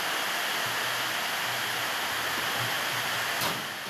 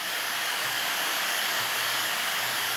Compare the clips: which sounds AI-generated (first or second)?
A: second